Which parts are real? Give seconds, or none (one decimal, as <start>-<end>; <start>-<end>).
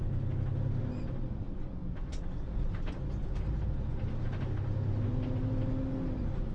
0.0-6.5